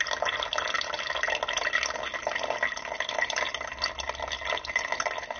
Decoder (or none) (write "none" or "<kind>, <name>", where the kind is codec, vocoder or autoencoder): none